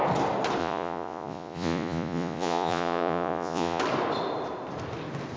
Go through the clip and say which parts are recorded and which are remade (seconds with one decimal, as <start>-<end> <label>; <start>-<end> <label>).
0.0-0.6 recorded; 0.6-3.8 remade; 3.8-5.4 recorded

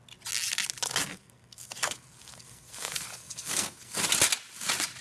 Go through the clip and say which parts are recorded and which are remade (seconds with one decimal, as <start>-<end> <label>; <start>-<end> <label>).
0.0-1.1 recorded; 1.1-4.1 remade; 4.1-5.0 recorded

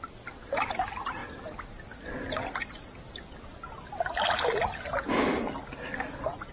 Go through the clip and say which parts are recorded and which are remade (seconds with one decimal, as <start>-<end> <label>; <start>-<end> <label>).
0.0-1.2 remade; 1.2-5.1 recorded; 5.1-5.6 remade; 5.6-6.5 recorded

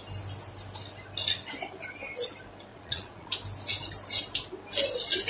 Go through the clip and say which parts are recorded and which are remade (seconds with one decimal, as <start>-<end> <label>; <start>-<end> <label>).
0.0-2.7 recorded; 2.7-3.3 remade; 3.3-5.3 recorded